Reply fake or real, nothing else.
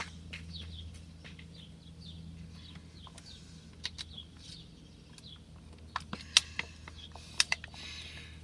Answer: real